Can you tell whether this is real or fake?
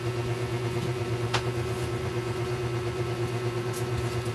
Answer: fake